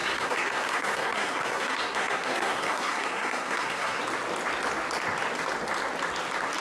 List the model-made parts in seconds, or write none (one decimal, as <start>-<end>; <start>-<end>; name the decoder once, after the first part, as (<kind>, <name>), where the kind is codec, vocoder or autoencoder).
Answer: 0.0-4.0 (codec, SNAC)